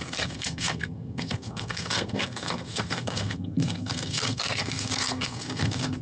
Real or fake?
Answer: fake